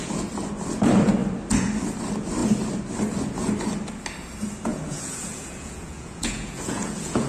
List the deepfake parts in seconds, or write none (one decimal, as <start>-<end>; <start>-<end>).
4.7-7.3